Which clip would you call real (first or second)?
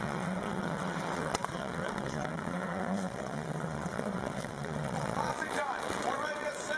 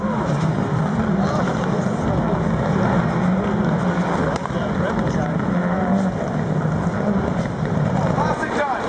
second